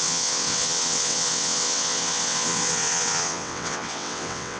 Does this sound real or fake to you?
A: fake